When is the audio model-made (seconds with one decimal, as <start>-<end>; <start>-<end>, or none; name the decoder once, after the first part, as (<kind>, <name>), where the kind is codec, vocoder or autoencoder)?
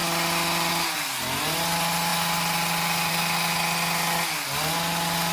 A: none